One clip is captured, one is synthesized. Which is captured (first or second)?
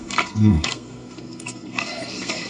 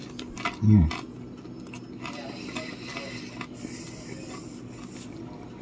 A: second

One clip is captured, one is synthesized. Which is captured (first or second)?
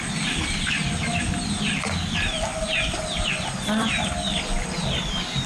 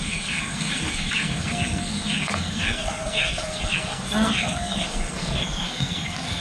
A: first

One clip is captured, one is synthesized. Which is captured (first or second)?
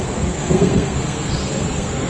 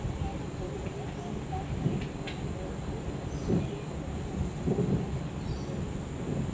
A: second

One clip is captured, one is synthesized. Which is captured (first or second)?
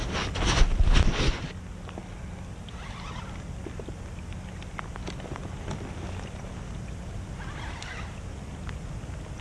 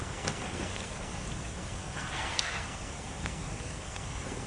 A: first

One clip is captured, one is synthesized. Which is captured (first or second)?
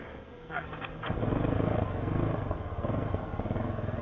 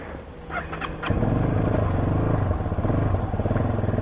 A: second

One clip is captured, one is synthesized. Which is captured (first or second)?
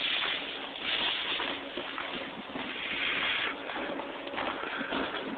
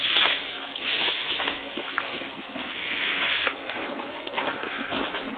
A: first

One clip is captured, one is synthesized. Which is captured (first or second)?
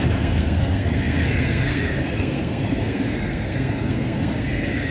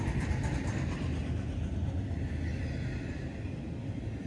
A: second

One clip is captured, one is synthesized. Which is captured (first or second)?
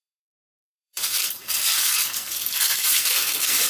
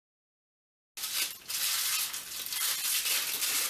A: second